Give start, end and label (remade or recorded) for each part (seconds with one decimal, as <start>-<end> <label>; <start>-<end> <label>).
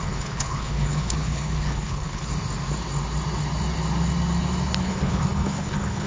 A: 0.0-2.3 remade; 2.3-4.8 recorded; 4.8-6.1 remade